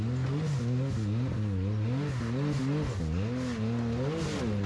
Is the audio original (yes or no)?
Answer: yes